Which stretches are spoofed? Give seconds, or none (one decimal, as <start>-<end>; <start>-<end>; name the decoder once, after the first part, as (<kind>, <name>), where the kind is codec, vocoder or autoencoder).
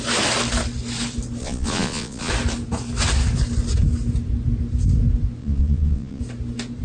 1.4-2.3 (vocoder, Vocos); 5.4-6.2